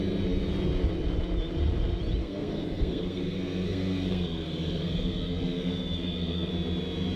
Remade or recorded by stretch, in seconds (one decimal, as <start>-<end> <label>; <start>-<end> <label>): 0.0-2.2 recorded; 2.2-6.5 remade; 6.5-7.2 recorded